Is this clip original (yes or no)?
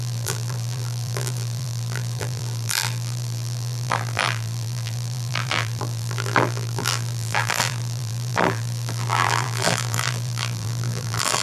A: no